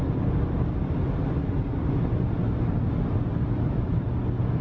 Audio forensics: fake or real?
real